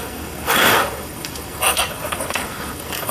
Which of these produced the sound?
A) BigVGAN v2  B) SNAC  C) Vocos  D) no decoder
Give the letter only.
B